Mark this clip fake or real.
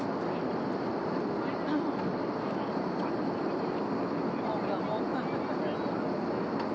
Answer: real